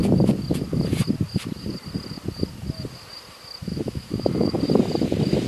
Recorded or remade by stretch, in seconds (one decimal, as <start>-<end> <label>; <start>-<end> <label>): 0.0-3.7 recorded; 3.7-4.6 remade; 4.6-5.5 recorded